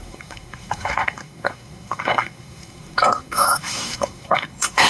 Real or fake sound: fake